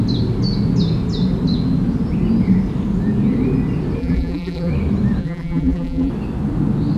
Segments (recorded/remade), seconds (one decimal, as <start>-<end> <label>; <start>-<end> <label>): 0.0-4.0 recorded; 4.0-4.7 remade; 4.7-5.2 recorded; 5.2-6.1 remade; 6.1-7.0 recorded